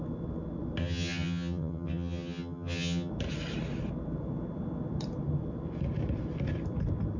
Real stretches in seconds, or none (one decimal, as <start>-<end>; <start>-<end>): 0.0-0.8; 3.1-7.2